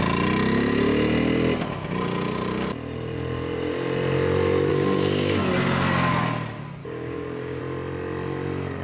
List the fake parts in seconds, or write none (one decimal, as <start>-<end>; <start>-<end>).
4.7-5.5; 6.8-7.6